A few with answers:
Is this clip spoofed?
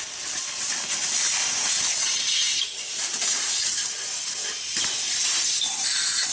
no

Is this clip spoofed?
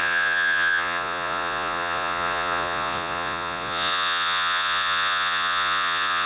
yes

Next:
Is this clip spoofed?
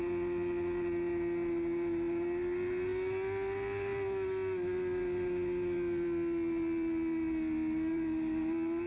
no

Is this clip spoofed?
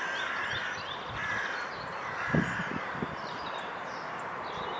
no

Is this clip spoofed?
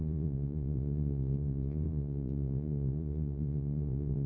yes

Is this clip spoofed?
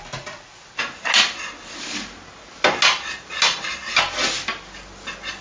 no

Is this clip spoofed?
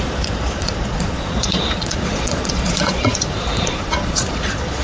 yes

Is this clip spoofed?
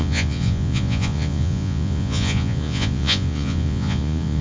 yes